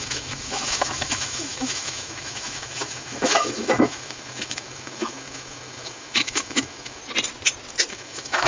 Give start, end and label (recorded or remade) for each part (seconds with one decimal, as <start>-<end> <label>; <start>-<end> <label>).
0.0-7.0 remade; 7.0-7.9 recorded; 7.9-8.5 remade